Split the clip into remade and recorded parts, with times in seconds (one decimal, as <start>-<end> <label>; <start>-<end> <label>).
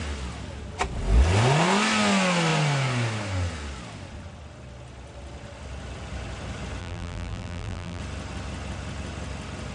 0.0-6.8 recorded; 6.8-8.0 remade; 8.0-9.7 recorded